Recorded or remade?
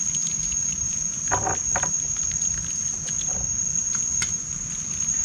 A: recorded